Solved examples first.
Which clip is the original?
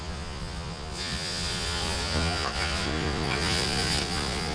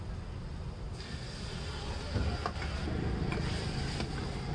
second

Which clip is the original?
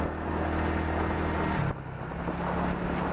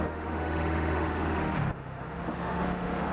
first